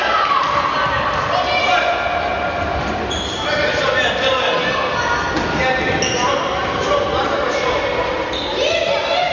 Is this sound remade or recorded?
recorded